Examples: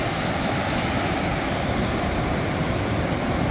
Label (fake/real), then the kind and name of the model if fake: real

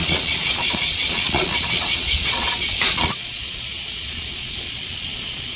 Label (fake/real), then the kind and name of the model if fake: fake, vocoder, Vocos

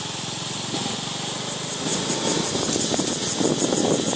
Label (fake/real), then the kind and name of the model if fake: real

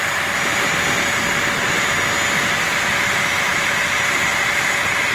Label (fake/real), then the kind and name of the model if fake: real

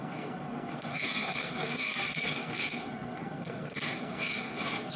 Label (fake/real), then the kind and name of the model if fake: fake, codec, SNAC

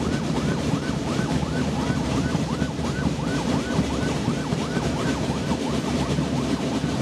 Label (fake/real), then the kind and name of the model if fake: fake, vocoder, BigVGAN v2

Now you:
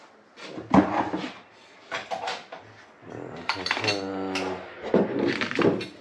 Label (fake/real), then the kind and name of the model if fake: real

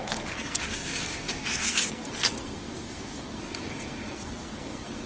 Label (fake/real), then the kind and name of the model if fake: fake, codec, SNAC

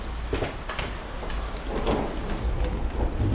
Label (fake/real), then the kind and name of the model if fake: real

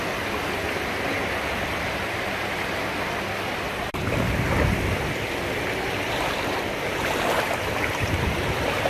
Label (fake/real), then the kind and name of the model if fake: fake, vocoder, BigVGAN v2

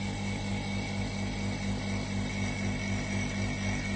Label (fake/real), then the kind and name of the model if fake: real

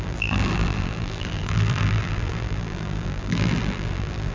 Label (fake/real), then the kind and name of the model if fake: fake, vocoder, BigVGAN v2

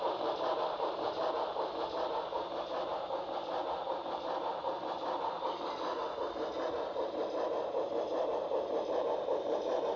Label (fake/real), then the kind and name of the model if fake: fake, vocoder, BigVGAN v2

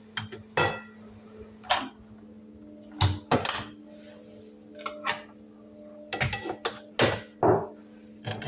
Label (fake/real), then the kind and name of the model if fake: real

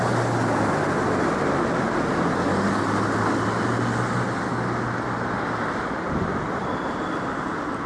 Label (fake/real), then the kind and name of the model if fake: real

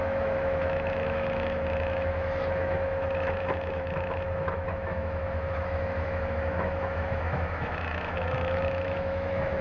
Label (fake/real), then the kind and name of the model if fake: fake, autoencoder, DAC-VAE